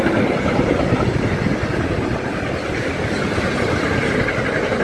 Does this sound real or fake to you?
real